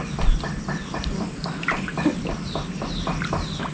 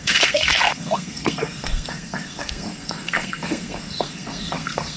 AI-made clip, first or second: second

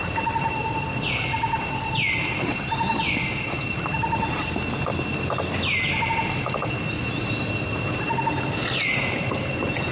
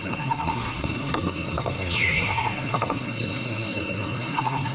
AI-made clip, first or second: second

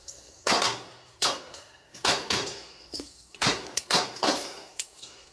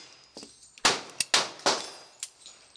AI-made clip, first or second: first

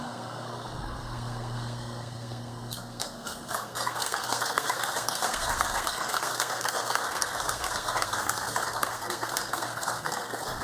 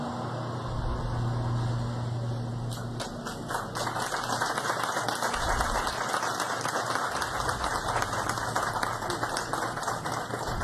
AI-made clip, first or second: first